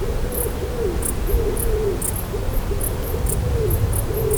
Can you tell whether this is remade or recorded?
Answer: recorded